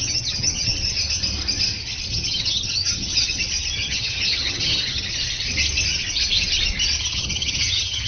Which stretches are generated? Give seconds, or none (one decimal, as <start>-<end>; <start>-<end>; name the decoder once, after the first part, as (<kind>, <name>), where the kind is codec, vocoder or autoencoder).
0.0-0.7 (vocoder, HiFi-GAN); 2.1-3.4; 3.8-5.2; 7.1-8.1